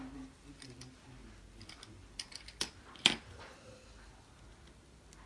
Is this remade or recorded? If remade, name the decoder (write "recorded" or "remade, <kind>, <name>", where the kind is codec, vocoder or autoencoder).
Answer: recorded